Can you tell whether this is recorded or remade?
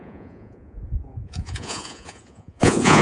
remade